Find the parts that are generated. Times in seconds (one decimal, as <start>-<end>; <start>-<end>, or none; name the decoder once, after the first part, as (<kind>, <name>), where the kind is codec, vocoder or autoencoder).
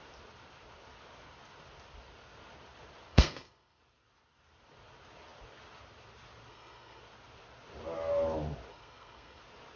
3.1-3.8 (codec, SNAC); 6.5-7.0; 8.7-9.4